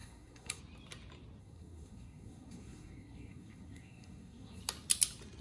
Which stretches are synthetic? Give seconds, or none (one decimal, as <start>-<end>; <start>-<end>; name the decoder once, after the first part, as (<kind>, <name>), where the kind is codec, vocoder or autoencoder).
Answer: 0.0-0.6 (codec, SNAC); 1.4-4.6